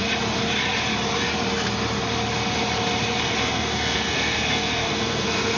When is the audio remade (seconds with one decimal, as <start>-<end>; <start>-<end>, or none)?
3.4-5.6